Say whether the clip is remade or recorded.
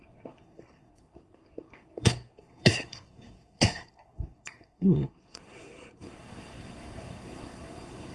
remade